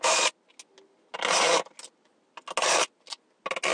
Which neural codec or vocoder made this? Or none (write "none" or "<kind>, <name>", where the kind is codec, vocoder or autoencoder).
none